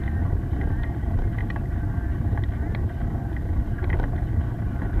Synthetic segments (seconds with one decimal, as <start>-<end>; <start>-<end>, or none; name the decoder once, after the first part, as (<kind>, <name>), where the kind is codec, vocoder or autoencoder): 0.7-1.4 (vocoder, BigVGAN v2); 4.4-5.0